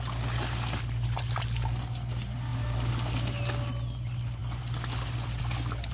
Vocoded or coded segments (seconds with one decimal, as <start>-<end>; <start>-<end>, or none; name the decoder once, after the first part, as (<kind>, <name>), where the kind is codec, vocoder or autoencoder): none